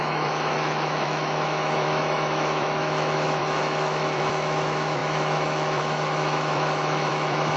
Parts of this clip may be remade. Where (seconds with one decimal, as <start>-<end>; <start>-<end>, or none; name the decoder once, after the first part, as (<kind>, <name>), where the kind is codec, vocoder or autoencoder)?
0.0-7.6 (autoencoder, DAC-VAE)